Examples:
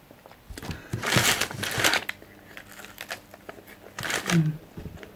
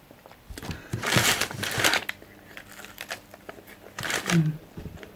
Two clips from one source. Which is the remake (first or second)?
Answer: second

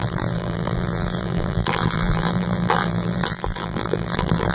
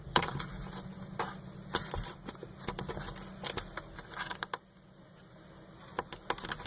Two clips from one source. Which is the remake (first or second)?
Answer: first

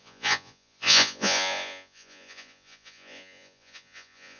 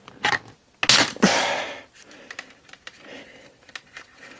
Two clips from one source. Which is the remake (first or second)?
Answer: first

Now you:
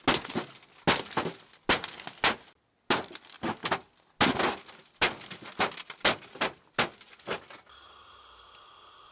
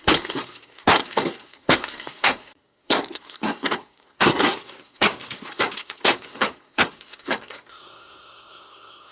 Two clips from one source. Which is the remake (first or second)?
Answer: second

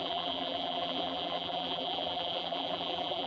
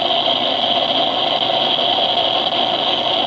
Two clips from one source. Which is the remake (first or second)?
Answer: first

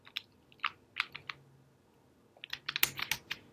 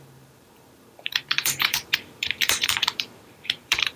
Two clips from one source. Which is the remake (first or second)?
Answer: second